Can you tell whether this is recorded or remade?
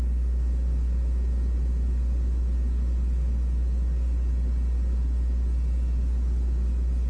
recorded